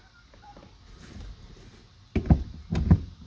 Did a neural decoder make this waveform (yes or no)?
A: no